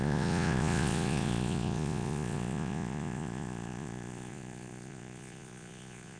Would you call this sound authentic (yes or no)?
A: no